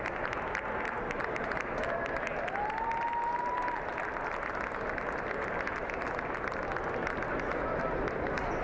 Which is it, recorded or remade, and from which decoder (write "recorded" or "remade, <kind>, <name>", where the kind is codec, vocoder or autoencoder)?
recorded